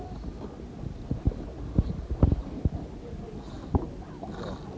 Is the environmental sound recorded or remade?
recorded